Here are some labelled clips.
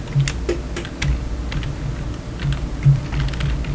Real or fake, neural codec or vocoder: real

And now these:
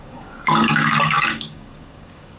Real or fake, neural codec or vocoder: fake, codec, DAC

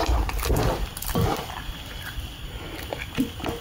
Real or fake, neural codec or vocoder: real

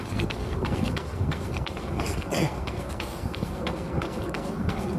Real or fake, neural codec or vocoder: fake, codec, SNAC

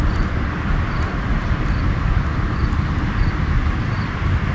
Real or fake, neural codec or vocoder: real